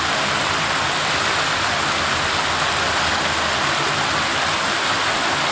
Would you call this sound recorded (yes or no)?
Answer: yes